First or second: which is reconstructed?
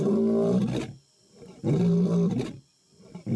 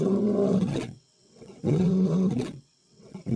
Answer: second